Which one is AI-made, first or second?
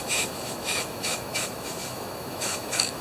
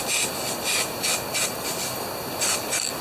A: first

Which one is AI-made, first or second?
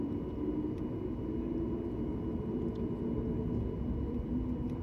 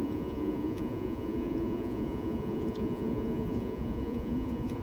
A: second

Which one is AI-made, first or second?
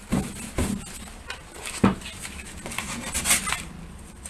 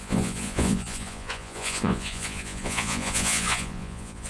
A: second